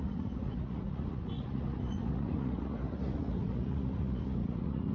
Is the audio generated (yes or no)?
yes